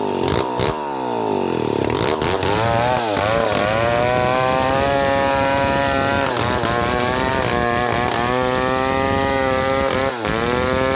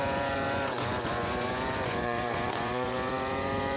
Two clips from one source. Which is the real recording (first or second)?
first